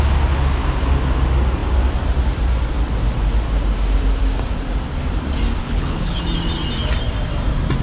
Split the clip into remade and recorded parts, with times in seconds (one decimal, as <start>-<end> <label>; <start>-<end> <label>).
0.0-5.6 recorded; 5.6-6.2 remade; 6.2-7.8 recorded